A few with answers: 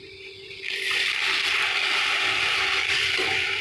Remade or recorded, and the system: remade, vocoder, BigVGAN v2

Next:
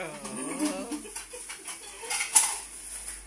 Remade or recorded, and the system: recorded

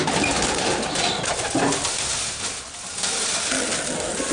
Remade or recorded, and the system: recorded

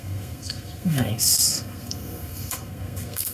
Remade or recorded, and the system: remade, codec, SNAC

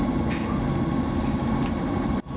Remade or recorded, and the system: recorded